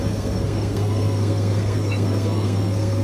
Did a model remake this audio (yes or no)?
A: yes